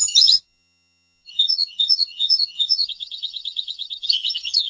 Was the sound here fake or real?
fake